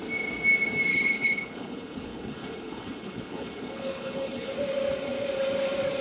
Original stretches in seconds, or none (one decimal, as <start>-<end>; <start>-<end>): 0.0-0.9; 4.5-6.0

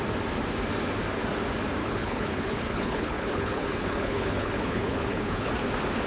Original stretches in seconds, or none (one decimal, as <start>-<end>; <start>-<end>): 0.0-1.8; 5.5-6.1